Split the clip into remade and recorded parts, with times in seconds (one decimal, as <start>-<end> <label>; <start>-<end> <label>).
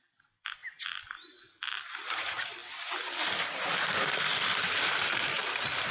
0.0-5.9 remade